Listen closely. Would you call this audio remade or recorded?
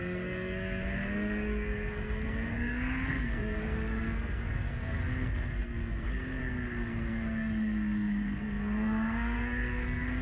remade